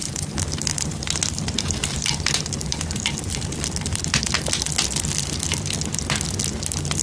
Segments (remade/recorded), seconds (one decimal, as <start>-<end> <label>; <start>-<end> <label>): 0.0-4.2 remade; 4.2-7.0 recorded